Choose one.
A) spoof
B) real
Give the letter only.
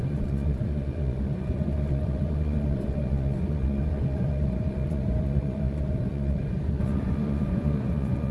A